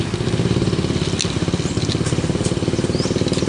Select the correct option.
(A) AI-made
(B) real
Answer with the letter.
B